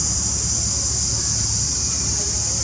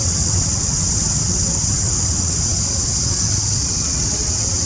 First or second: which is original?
first